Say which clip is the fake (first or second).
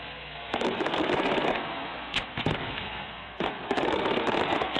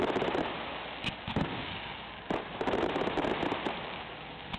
first